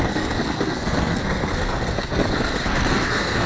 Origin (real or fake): fake